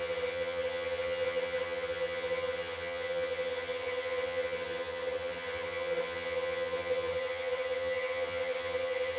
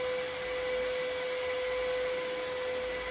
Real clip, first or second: second